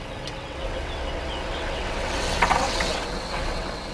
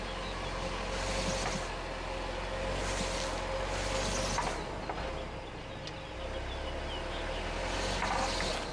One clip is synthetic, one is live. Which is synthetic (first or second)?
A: first